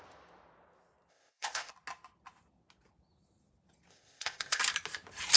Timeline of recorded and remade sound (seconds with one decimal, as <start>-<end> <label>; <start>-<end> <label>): 0.0-1.1 recorded; 1.1-1.7 remade; 1.7-3.9 recorded; 3.9-4.6 remade; 4.6-5.4 recorded